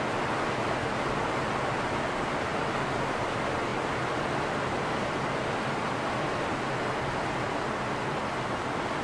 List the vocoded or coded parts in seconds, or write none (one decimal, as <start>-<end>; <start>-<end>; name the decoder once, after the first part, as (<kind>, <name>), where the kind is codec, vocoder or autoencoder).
none